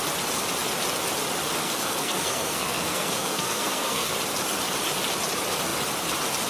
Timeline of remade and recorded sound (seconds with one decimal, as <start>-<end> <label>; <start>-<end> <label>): 0.0-1.6 recorded; 1.6-4.1 remade; 4.1-6.5 recorded